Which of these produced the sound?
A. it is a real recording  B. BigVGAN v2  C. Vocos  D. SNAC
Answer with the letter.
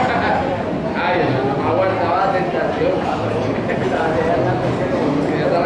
A